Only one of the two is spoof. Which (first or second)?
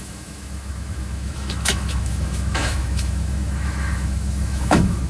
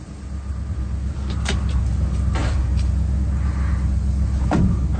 first